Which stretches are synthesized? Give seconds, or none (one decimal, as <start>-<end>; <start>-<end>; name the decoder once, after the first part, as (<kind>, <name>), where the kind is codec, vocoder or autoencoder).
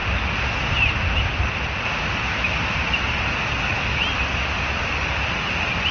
none